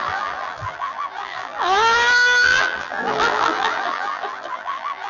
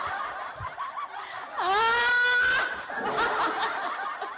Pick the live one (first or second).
second